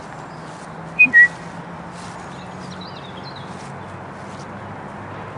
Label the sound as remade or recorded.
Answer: recorded